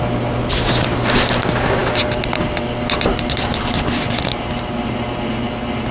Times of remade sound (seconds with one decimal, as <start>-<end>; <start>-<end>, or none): none